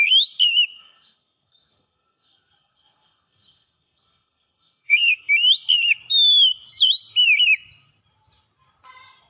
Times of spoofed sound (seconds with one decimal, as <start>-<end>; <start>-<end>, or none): 0.7-5.3